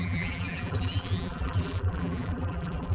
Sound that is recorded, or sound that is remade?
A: remade